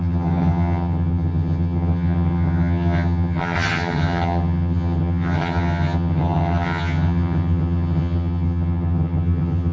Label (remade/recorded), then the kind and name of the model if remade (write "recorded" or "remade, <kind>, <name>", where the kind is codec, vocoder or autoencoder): remade, vocoder, HiFi-GAN